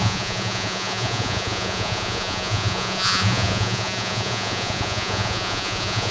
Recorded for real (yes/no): no